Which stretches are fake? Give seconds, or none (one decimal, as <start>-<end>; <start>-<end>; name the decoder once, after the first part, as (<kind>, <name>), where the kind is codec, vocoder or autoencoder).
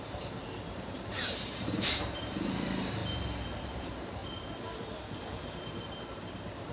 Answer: 0.0-3.0 (vocoder, BigVGAN v2); 3.6-4.2; 5.0-6.7